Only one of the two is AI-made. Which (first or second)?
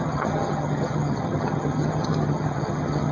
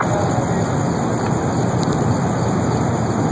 first